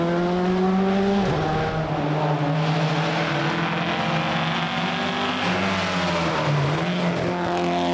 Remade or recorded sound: recorded